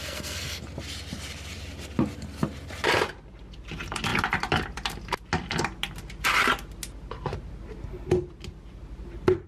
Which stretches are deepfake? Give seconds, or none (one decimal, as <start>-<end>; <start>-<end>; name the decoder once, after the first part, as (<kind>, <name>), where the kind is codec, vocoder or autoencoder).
0.0-0.6 (codec, SNAC)